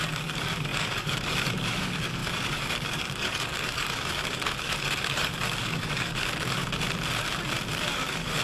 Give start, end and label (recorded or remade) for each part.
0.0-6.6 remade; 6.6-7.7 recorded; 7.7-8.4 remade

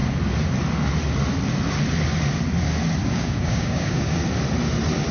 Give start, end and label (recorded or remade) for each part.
0.0-3.1 recorded; 3.1-4.2 remade; 4.2-5.1 recorded

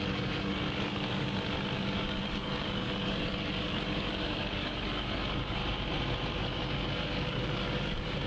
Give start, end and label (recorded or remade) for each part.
0.0-5.6 remade; 5.6-6.4 recorded; 6.4-8.3 remade

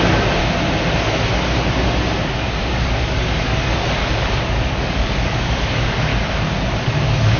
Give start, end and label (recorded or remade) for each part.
0.0-0.4 remade; 0.4-2.2 recorded; 2.2-6.1 remade; 6.1-6.8 recorded; 6.8-7.4 remade

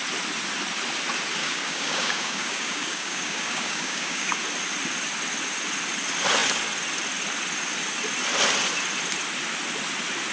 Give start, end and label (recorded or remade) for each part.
0.0-1.4 recorded; 1.4-4.4 remade; 4.4-10.3 recorded

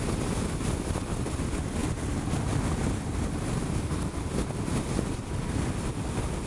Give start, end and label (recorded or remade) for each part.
0.0-6.5 recorded

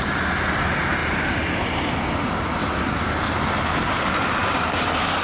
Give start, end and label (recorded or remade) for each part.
0.0-5.2 recorded

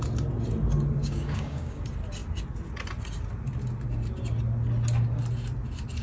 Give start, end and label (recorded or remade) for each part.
0.0-1.0 recorded; 1.0-1.8 remade; 1.8-6.0 recorded